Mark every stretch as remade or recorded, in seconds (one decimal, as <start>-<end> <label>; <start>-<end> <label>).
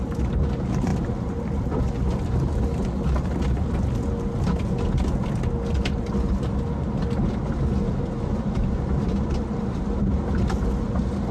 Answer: 0.0-11.3 recorded